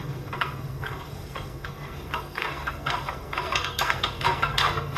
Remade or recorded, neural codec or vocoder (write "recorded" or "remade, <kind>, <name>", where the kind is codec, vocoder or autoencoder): remade, codec, SNAC